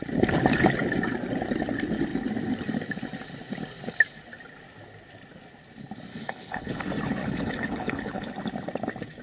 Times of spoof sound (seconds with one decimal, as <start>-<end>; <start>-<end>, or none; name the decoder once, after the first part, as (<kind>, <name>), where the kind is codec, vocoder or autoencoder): 6.1-6.8 (codec, HILCodec); 7.2-8.3